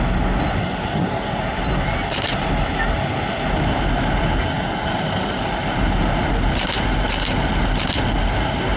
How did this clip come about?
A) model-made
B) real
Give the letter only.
B